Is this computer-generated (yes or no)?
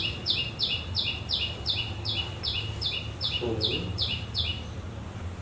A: yes